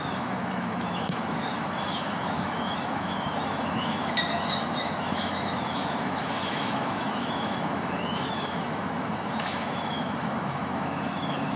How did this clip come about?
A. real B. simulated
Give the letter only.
B